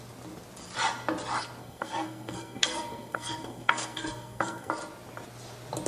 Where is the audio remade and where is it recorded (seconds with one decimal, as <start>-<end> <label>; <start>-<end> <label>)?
0.0-1.6 recorded; 1.6-4.7 remade; 4.7-5.9 recorded